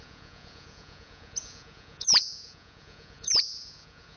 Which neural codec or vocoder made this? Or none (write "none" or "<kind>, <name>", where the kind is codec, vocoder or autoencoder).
vocoder, Vocos